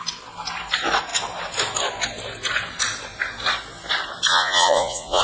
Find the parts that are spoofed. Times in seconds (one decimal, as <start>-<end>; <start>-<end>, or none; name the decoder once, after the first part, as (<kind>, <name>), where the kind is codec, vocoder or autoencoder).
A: 4.3-5.2 (vocoder, Vocos)